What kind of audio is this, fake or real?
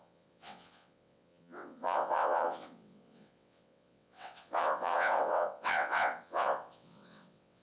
fake